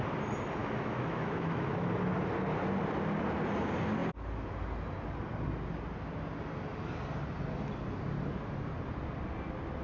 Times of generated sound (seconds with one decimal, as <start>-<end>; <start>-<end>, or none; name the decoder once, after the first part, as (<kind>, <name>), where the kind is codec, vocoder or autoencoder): 0.6-1.9 (autoencoder, DAC-VAE)